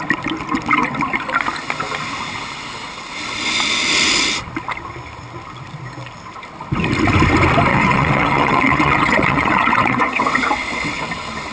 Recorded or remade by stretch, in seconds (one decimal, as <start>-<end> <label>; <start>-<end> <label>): 0.0-7.7 recorded; 7.7-11.0 remade; 11.0-11.5 recorded